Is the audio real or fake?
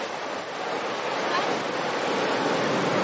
real